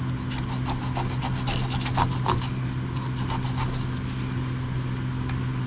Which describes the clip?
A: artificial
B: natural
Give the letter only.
B